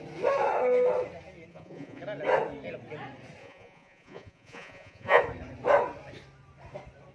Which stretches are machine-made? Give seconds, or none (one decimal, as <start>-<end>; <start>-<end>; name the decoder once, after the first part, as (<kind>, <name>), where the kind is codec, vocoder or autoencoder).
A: 1.5-2.0 (vocoder, Vocos); 3.4-5.2